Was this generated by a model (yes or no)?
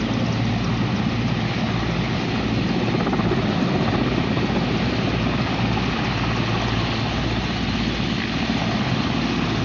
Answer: no